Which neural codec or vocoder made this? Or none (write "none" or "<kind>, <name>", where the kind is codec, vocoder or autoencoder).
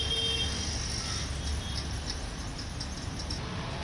none